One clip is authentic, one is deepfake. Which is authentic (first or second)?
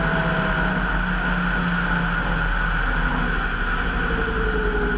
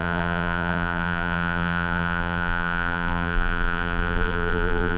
first